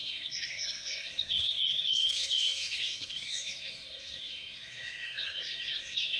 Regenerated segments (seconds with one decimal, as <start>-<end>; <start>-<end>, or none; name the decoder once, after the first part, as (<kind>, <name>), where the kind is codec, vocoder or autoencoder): 0.0-6.2 (codec, SNAC)